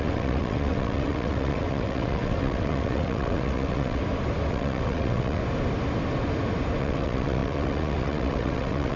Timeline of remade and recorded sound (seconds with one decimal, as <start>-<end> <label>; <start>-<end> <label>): 0.0-4.0 remade; 4.0-4.5 recorded; 4.5-5.4 remade; 5.4-6.8 recorded; 6.8-9.0 remade